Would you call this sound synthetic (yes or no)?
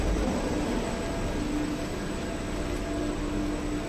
no